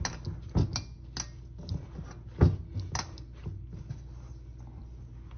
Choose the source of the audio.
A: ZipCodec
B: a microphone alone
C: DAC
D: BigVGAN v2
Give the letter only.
B